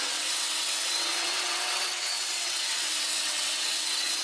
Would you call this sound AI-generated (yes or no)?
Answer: yes